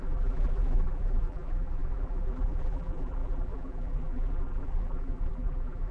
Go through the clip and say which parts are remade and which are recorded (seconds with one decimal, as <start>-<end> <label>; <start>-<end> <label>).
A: 0.0-5.9 remade